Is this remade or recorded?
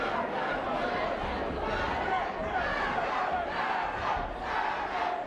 recorded